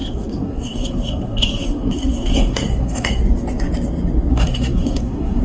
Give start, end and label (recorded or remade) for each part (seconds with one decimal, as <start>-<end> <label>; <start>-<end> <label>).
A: 0.0-3.2 remade; 3.2-4.3 recorded; 4.3-5.4 remade